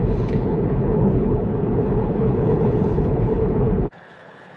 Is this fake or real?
fake